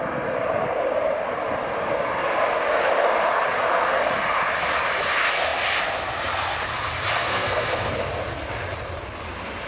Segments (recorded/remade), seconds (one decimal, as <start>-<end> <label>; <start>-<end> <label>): 0.0-7.2 recorded; 7.2-7.9 remade; 7.9-9.7 recorded